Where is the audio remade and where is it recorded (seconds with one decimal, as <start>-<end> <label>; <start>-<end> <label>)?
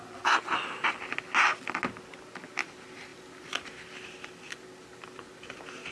0.0-5.9 recorded